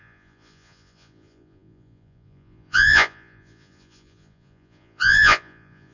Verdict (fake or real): fake